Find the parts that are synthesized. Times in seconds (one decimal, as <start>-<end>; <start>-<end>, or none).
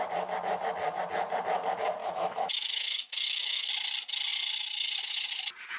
2.0-3.7